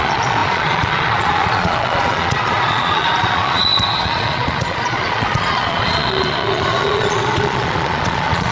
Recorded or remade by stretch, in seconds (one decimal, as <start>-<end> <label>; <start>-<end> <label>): 0.0-8.5 remade